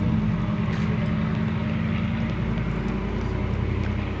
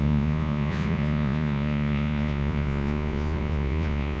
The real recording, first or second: first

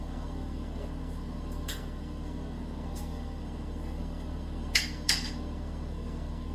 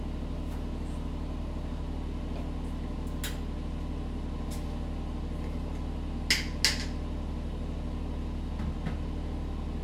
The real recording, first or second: second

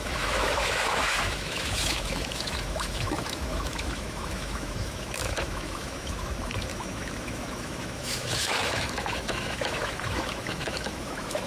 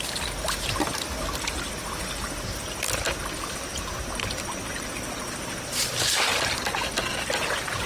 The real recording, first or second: second